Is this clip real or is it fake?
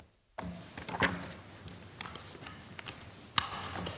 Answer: real